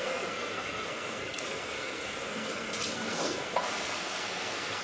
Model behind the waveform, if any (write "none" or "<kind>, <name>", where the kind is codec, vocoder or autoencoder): codec, SNAC